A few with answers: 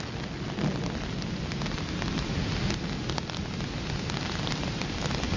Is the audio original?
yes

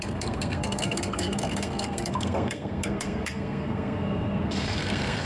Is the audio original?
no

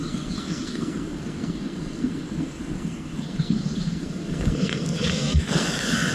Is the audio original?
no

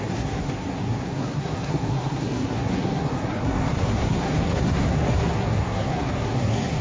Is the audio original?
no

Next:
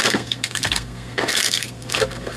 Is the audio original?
no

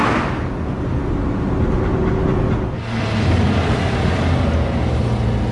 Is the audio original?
yes